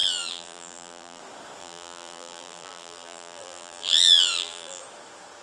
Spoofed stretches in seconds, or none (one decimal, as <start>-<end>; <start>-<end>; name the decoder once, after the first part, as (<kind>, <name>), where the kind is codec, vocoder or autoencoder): 0.0-1.2 (vocoder, BigVGAN v2); 1.6-4.8